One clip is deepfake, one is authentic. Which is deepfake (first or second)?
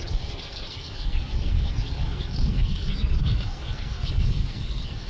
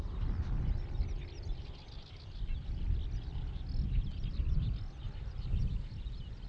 first